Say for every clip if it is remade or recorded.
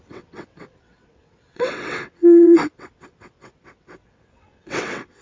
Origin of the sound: remade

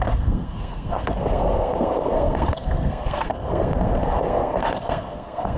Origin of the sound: remade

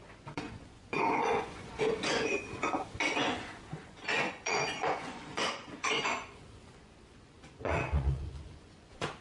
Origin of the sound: remade